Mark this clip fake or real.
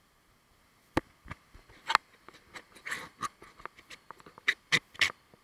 real